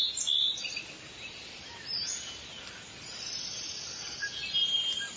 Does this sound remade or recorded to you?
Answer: recorded